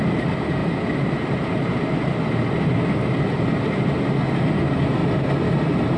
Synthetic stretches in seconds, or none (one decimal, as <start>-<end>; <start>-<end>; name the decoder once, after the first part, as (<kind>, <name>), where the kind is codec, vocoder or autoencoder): none